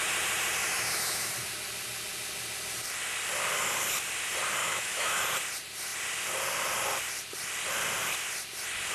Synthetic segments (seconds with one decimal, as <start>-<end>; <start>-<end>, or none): 0.6-1.3; 4.6-5.2